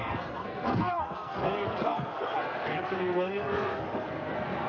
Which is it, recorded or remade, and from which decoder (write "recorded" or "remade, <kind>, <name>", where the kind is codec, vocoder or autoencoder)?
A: remade, codec, SNAC